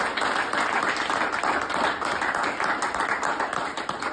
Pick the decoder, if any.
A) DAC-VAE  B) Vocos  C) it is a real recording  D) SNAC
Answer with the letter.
C